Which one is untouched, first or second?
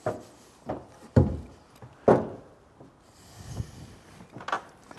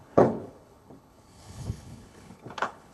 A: first